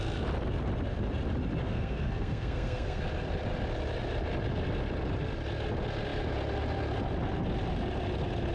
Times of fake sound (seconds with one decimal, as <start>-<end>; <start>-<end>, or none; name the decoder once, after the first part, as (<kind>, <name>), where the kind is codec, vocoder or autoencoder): 1.6-3.0 (codec, SNAC)